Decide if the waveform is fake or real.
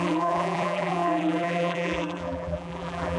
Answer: fake